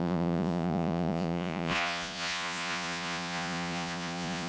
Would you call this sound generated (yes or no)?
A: yes